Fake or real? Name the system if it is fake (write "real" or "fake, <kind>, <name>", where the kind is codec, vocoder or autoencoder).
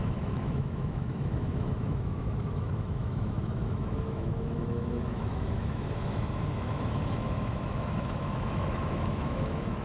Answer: fake, autoencoder, DAC-VAE